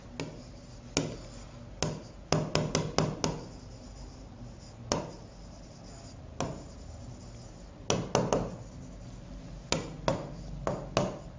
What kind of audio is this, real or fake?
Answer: real